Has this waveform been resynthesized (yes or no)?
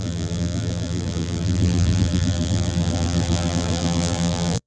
yes